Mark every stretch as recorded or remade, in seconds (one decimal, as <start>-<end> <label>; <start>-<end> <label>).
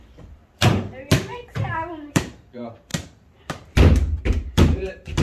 0.0-2.9 remade; 2.9-3.4 recorded; 3.4-5.2 remade